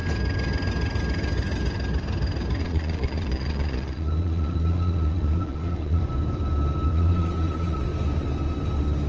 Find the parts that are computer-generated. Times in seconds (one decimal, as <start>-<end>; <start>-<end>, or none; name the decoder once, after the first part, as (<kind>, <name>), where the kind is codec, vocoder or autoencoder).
2.6-6.0 (vocoder, Vocos); 6.9-7.9